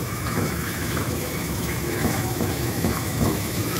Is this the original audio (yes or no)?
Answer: no